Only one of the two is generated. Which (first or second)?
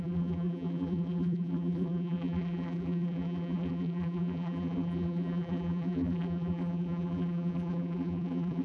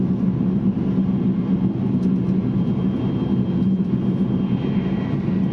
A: first